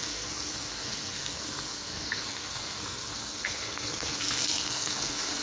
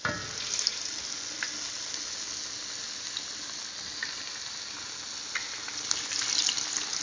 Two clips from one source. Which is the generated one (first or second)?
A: first